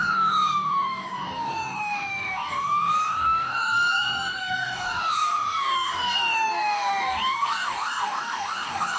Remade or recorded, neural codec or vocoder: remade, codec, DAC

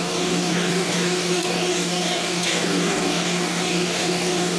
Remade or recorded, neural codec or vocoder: remade, codec, DAC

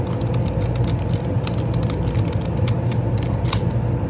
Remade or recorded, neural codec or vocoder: recorded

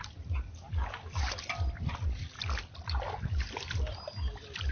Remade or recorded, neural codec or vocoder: recorded